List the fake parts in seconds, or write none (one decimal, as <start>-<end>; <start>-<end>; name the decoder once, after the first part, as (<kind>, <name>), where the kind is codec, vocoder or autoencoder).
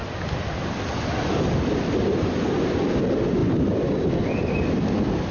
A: none